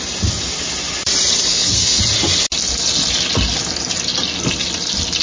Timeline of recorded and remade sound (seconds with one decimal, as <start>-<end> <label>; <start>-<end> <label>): 0.0-1.5 recorded; 1.5-2.0 remade; 2.0-5.2 recorded